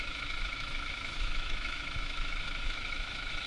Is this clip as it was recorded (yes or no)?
no